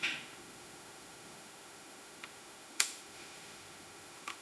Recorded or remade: remade